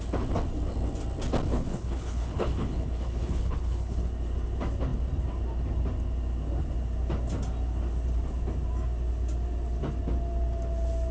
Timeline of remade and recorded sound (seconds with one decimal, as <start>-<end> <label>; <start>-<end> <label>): 0.0-1.5 recorded; 1.5-4.1 remade; 4.1-11.1 recorded